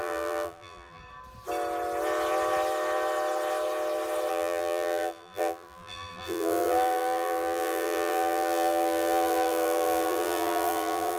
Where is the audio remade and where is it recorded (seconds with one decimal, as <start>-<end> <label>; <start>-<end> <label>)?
0.0-1.0 remade; 1.0-4.3 recorded; 4.3-11.2 remade